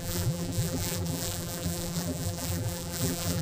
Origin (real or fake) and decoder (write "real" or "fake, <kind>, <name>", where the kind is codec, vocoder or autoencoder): fake, vocoder, BigVGAN v2